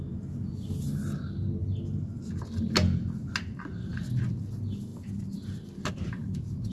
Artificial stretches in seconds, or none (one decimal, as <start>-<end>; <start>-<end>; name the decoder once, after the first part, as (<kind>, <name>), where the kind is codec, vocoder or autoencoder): none